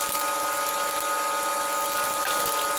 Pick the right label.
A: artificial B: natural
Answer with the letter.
B